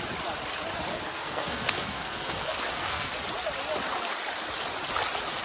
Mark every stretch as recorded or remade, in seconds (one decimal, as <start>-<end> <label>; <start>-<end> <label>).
0.0-0.9 recorded; 0.9-3.1 remade; 3.1-5.4 recorded